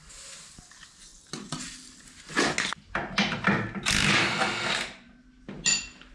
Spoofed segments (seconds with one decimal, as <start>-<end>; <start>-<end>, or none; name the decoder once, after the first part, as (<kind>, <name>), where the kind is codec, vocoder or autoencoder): none